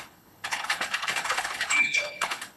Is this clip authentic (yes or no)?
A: no